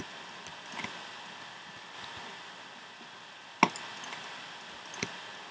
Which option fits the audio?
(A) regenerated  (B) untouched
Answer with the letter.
B